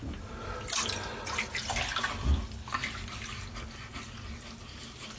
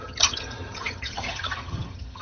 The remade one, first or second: second